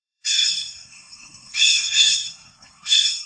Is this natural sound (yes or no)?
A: no